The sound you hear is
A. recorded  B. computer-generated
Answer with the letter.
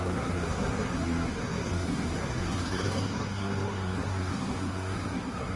B